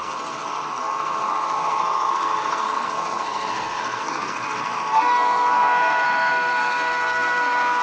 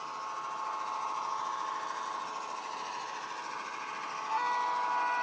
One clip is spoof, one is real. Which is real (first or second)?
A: second